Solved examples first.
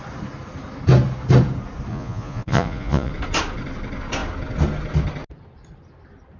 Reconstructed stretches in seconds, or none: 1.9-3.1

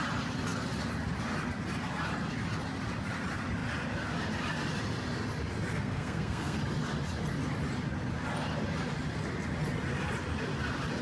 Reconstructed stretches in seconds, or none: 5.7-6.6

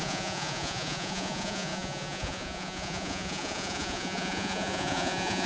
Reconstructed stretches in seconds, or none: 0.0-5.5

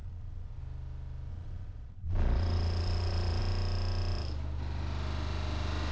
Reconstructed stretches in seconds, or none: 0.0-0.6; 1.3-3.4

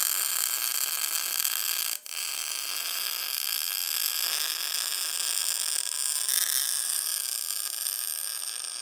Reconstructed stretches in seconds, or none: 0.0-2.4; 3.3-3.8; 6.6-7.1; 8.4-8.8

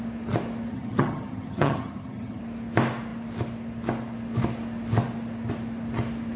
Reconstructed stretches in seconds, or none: 0.7-2.4